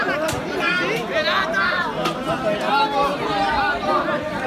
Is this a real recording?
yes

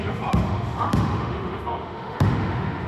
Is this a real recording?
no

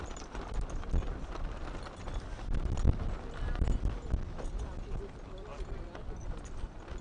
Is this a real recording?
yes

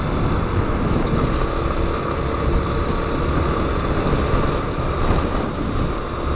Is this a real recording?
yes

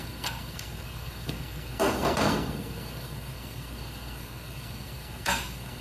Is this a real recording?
no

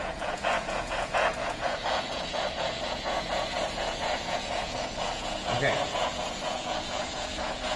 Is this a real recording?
no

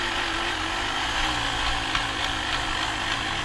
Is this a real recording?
yes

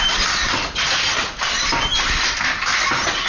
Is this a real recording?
yes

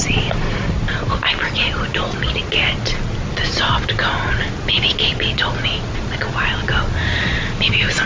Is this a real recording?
yes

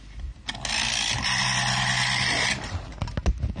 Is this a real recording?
yes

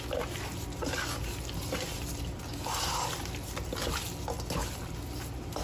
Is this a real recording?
yes